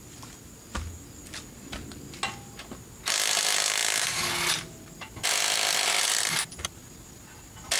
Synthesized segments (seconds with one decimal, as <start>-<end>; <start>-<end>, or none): none